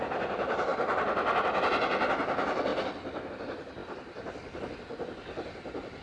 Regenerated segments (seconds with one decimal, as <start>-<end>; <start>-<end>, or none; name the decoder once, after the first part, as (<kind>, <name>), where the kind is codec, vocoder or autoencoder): none